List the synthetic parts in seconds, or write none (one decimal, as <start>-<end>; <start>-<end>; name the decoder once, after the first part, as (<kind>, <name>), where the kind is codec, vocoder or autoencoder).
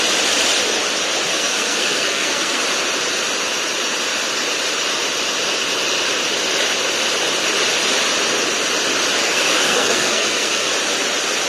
1.3-2.6 (codec, SNAC); 9.2-10.7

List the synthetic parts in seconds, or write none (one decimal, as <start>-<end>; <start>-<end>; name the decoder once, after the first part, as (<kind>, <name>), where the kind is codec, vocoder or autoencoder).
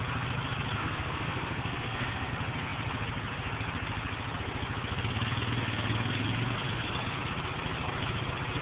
0.8-2.3 (codec, SNAC)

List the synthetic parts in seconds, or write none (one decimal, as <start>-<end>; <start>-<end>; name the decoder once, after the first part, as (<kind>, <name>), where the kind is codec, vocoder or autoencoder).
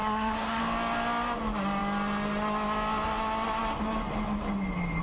0.0-0.6 (codec, SNAC)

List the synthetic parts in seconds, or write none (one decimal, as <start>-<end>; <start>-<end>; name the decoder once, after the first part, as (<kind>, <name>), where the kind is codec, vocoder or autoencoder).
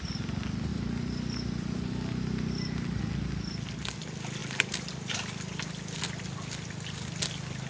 none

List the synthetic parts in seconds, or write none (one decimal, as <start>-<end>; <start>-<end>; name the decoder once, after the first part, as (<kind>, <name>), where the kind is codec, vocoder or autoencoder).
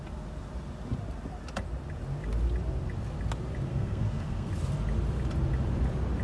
3.7-4.5 (codec, SNAC)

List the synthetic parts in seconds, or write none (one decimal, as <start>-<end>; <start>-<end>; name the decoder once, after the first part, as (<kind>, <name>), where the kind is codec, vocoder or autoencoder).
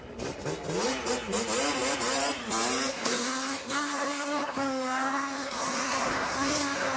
2.9-7.0 (codec, SNAC)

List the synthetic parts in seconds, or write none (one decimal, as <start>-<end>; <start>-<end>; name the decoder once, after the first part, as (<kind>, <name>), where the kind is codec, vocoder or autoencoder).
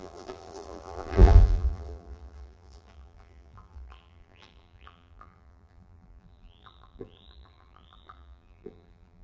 0.0-9.2 (vocoder, BigVGAN v2)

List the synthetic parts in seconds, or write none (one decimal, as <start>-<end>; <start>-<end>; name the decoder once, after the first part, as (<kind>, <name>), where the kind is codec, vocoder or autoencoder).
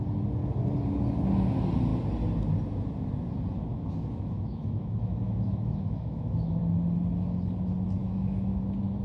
3.7-6.6 (autoencoder, DAC-VAE); 8.0-8.6